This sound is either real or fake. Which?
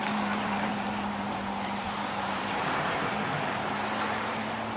fake